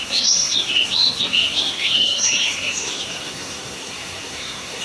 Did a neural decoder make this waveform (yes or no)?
yes